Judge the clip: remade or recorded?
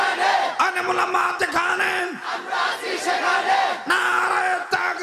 recorded